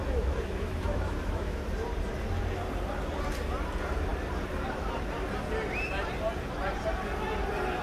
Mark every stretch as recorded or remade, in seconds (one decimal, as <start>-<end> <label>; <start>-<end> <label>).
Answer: 0.0-1.6 remade; 1.6-7.8 recorded